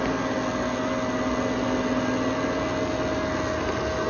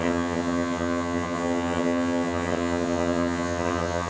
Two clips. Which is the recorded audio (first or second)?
first